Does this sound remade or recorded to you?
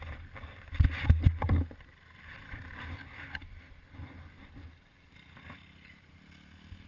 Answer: recorded